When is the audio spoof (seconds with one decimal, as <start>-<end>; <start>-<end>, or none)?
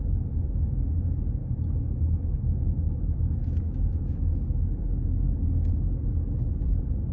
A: 1.4-5.7